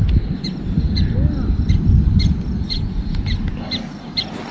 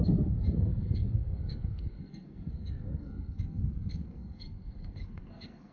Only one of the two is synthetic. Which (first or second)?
second